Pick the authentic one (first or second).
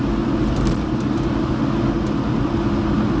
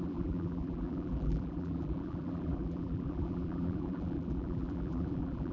first